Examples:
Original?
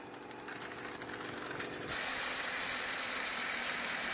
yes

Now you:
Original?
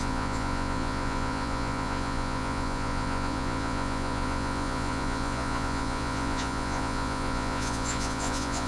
no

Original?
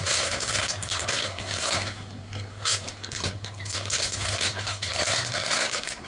no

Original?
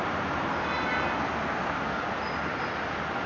yes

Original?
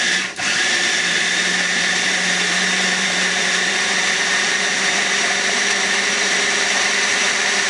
no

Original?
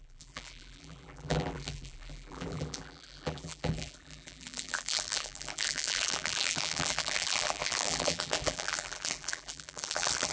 no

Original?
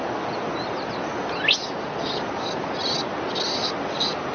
yes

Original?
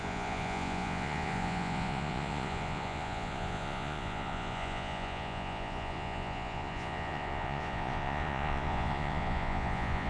no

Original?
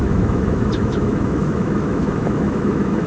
no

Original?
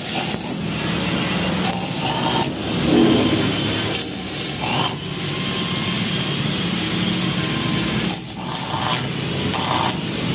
yes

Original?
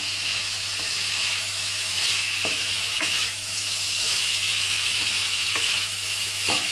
no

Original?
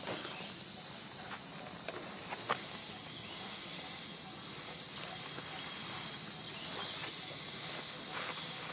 yes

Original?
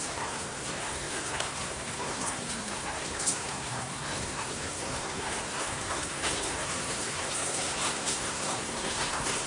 no